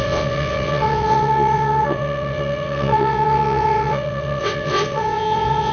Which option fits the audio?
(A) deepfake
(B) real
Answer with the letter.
A